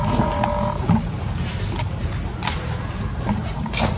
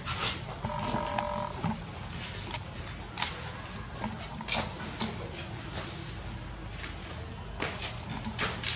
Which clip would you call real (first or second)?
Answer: second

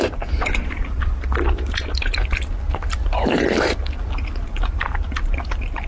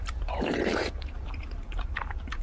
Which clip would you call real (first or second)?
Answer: first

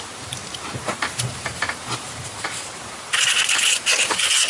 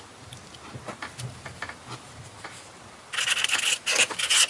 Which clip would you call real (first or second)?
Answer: second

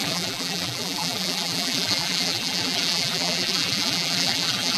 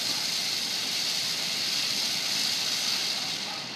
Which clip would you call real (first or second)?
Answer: second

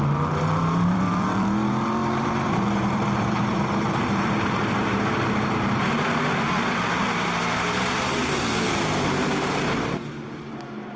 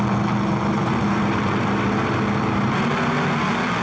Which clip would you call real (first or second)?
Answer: second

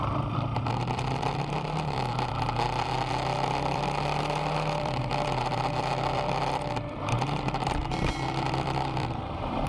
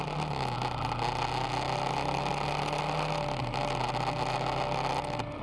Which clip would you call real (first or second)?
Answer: second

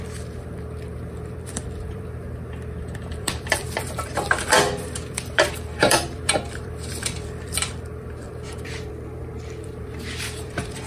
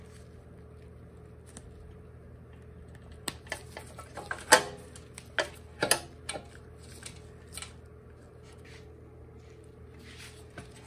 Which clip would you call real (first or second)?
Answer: second